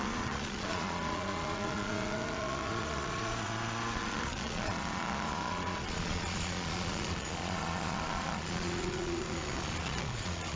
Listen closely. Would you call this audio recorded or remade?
remade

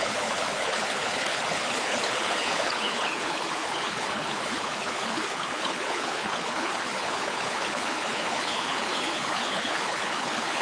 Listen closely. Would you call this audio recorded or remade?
remade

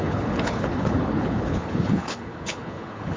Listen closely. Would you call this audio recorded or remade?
remade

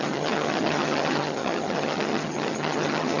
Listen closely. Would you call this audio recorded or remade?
remade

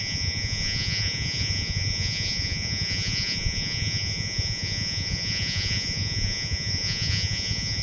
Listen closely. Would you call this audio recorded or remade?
remade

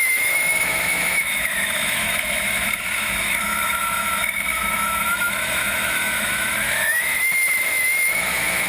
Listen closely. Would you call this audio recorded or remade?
remade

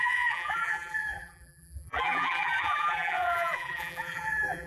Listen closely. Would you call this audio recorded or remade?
remade